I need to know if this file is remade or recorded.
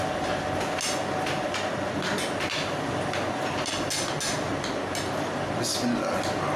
recorded